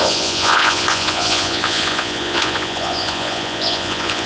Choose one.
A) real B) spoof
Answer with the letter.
B